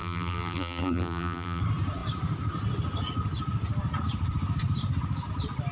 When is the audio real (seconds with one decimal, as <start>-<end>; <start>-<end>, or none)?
1.6-5.7